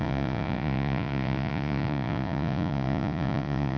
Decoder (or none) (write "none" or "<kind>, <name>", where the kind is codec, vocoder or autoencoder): vocoder, Vocos